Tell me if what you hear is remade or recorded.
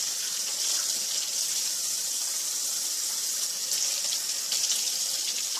recorded